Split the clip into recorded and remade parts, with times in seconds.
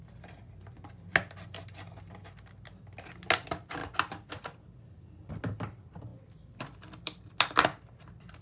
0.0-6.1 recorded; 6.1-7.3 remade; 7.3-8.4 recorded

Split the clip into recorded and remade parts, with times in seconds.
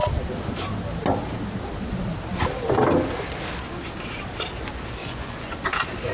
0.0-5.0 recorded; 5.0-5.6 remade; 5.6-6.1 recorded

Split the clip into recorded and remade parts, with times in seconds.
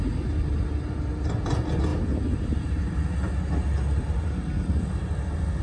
0.0-5.6 recorded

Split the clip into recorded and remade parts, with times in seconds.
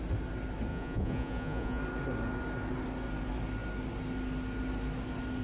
0.0-0.7 recorded; 0.7-1.8 remade; 1.8-5.4 recorded